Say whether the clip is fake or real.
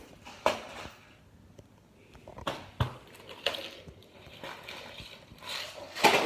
real